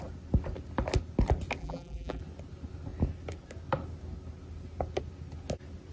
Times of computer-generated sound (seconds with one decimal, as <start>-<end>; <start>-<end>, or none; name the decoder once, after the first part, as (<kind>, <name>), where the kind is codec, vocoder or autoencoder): 1.6-2.2 (vocoder, BigVGAN v2)